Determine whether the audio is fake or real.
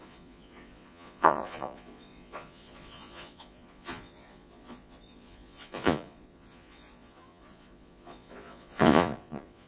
fake